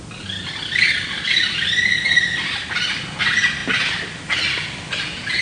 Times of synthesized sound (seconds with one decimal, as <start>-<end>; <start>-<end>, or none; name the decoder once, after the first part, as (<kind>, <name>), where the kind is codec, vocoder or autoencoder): none